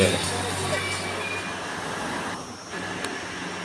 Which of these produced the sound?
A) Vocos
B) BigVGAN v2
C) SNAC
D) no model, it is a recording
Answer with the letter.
D